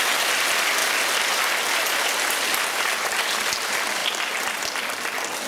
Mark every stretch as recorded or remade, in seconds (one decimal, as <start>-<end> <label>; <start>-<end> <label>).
0.0-5.5 recorded